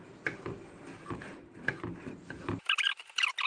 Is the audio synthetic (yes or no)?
no